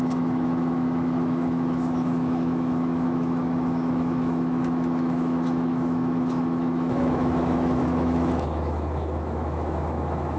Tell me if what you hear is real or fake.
fake